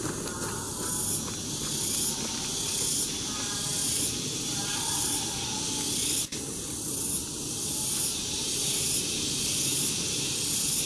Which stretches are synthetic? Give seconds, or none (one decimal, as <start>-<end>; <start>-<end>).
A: 3.7-5.4; 7.2-9.4